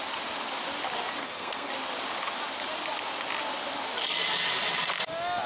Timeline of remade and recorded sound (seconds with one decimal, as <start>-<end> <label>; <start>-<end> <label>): 0.0-1.2 recorded; 1.2-1.7 remade; 1.7-5.5 recorded